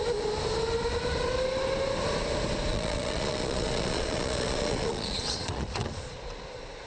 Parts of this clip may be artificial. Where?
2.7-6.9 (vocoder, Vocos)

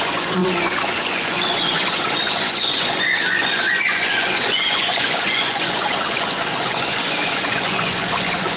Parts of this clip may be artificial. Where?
0.0-8.6 (vocoder, Vocos)